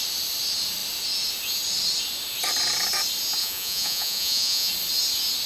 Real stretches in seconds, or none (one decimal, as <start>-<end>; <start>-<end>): 0.0-3.4; 4.7-5.5